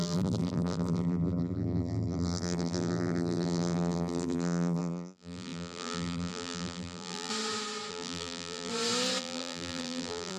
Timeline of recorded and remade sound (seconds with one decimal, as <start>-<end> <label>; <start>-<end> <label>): 0.0-7.3 remade; 7.3-7.9 recorded; 7.9-8.7 remade; 8.7-9.2 recorded; 9.2-10.4 remade